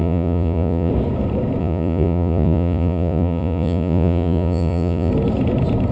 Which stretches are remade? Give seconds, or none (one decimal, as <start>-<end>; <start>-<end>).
0.0-0.9; 1.6-5.1